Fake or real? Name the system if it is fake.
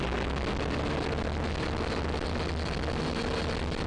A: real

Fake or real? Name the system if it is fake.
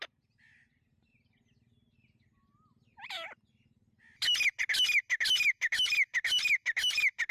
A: real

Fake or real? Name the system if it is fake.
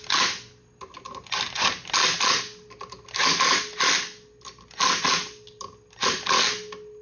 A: real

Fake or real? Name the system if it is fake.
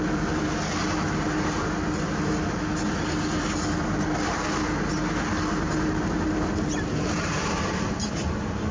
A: real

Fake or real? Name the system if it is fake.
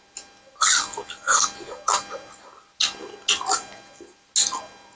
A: real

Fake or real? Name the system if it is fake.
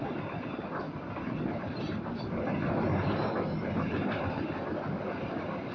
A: real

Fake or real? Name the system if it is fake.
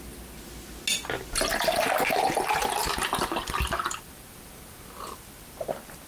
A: real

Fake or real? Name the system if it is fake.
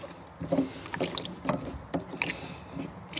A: real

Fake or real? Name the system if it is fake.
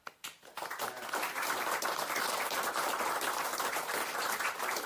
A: real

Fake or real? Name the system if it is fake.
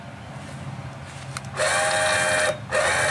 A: real